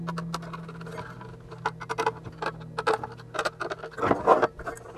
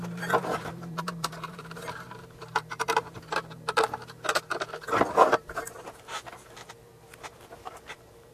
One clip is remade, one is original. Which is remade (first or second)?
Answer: second